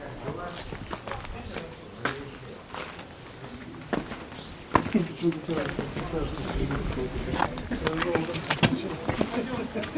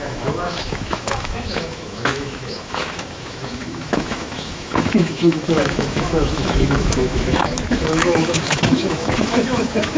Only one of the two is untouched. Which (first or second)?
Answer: first